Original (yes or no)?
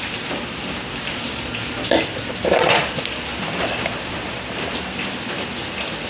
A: yes